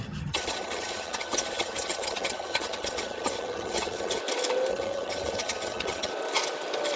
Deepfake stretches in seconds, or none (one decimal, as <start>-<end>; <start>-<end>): 0.0-4.2; 4.7-6.1